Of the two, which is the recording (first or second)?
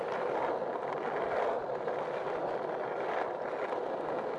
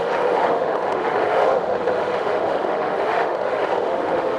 first